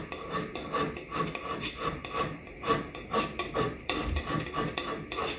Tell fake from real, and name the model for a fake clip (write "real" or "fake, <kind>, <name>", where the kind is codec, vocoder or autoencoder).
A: fake, vocoder, BigVGAN v2